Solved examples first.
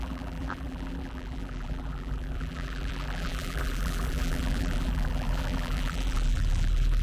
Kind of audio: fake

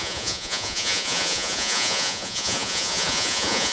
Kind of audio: fake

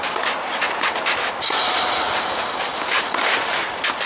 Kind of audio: real